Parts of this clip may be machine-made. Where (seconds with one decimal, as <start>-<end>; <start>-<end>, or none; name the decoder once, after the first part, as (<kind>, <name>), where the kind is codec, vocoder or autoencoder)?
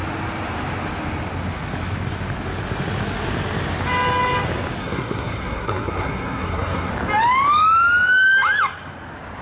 4.8-6.9 (codec, SNAC)